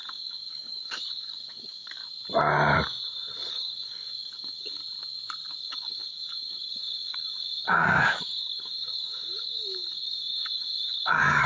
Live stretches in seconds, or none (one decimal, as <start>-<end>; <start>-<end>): 2.0-3.5; 4.8-5.6